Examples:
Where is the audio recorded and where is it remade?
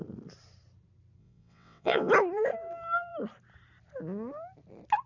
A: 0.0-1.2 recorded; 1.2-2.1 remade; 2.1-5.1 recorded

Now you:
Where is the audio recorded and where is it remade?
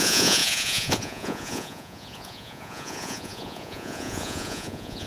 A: 0.0-5.1 remade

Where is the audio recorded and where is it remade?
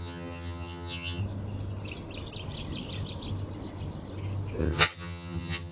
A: 0.0-1.2 remade; 1.2-4.6 recorded; 4.6-5.7 remade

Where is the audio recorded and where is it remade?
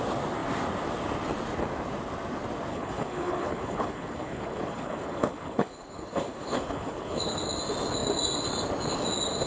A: 0.0-2.7 recorded; 2.7-7.4 remade; 7.4-9.5 recorded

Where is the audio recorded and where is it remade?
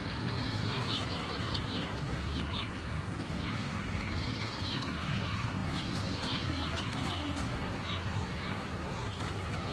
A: 0.0-9.7 remade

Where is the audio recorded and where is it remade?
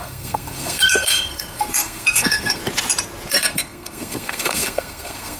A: 0.0-2.6 remade; 2.6-3.3 recorded; 3.3-5.4 remade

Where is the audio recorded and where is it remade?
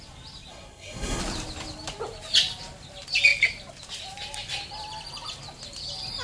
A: 0.0-0.5 recorded; 0.5-1.2 remade; 1.2-6.2 recorded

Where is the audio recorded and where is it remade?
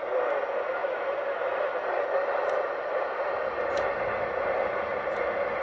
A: 0.0-5.6 recorded